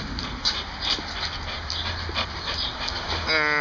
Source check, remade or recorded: recorded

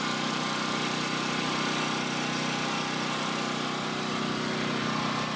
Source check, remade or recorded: recorded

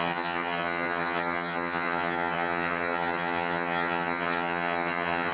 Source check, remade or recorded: remade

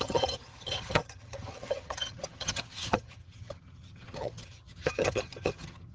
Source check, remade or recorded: remade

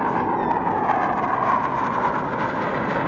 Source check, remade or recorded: recorded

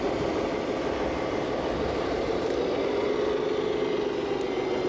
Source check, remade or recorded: recorded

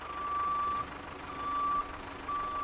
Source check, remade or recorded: recorded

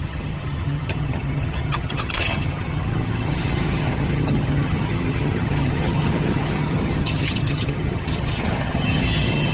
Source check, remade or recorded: remade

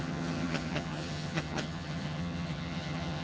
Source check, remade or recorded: remade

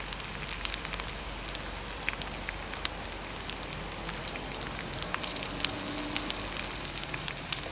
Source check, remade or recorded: recorded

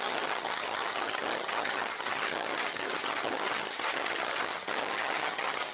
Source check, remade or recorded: remade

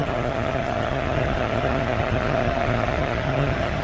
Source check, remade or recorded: remade